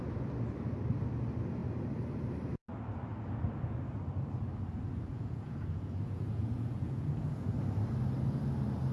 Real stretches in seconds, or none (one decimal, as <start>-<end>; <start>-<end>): 0.0-5.1; 7.5-8.9